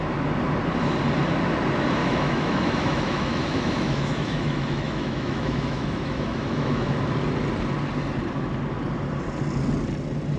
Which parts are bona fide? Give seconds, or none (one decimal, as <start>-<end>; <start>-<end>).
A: 0.0-2.0; 7.0-10.4